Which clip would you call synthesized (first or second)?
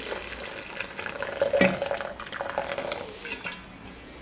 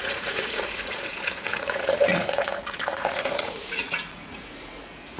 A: second